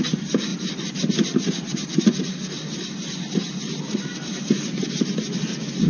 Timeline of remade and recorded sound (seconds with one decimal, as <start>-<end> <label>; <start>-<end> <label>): 0.0-5.9 recorded